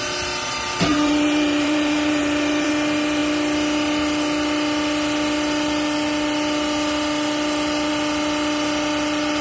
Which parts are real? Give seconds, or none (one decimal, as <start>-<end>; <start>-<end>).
0.0-0.9; 2.7-9.4

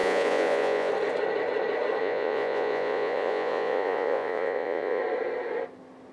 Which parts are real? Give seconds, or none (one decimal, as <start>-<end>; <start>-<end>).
0.9-2.0; 5.0-6.1

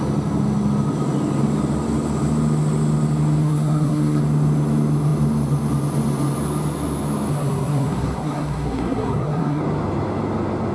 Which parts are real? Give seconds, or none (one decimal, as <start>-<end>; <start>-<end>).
0.0-3.4; 4.2-7.3; 9.6-10.7

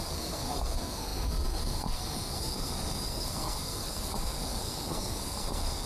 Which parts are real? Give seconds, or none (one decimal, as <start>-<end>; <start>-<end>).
none